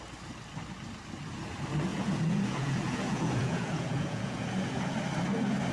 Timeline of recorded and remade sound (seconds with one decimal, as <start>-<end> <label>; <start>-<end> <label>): 0.0-1.9 recorded; 1.9-5.0 remade; 5.0-5.7 recorded